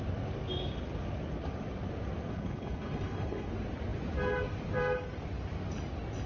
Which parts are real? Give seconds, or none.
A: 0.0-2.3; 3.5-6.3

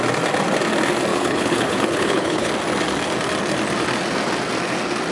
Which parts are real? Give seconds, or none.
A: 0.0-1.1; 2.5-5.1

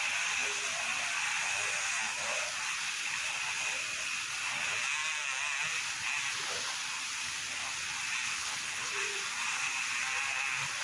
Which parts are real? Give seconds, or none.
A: 0.0-8.4; 8.9-10.8